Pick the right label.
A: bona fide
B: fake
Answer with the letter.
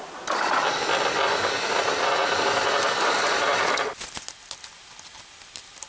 A